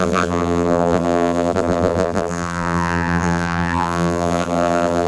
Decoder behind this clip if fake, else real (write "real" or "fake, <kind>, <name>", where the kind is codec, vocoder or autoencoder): fake, vocoder, BigVGAN v2